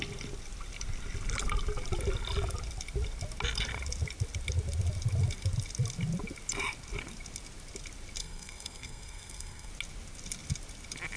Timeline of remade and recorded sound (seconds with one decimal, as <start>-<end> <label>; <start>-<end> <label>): 0.0-8.2 recorded; 8.2-9.7 remade; 9.7-11.2 recorded